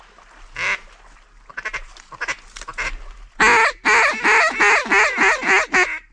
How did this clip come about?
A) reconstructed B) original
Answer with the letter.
B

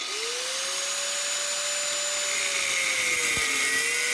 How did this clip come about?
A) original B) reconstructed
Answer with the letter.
A